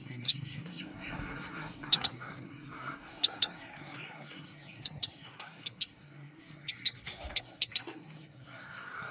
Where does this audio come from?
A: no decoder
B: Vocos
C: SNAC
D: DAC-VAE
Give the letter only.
C